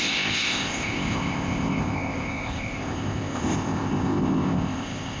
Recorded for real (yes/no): no